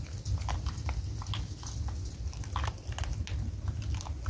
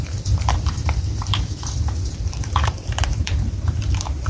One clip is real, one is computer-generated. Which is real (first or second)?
first